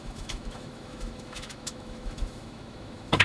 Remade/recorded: remade